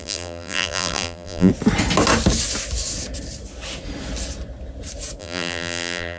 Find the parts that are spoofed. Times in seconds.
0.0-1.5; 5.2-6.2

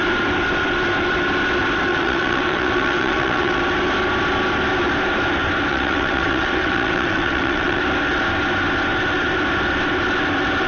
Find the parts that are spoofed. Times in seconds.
1.9-3.6; 5.7-7.8

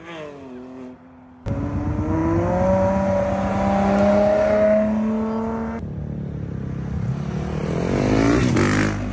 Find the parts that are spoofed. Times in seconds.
none

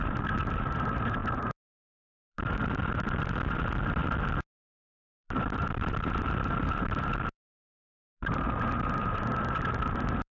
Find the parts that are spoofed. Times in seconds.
0.0-4.0; 4.5-10.4

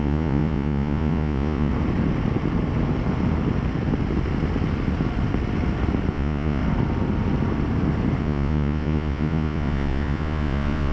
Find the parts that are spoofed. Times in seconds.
0.0-1.7; 6.1-6.6; 8.2-10.9